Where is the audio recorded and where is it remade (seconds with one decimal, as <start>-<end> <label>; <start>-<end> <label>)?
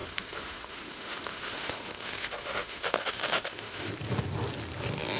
0.0-3.9 remade; 3.9-5.2 recorded